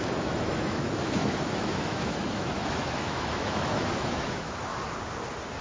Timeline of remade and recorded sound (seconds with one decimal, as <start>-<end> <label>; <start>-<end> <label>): 0.0-4.7 remade; 4.7-5.6 recorded